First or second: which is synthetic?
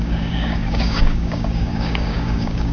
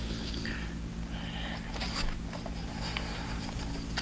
first